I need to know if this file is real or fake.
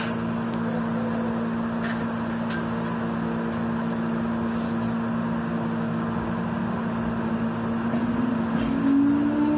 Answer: real